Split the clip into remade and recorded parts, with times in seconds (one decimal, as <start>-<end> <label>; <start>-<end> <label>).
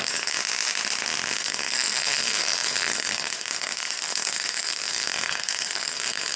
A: 0.0-0.4 remade; 0.4-1.3 recorded; 1.3-6.4 remade